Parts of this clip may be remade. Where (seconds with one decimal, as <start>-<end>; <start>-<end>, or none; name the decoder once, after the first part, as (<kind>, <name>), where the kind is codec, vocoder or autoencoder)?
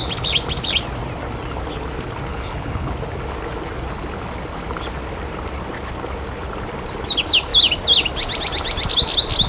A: 2.3-2.9 (codec, HILCodec)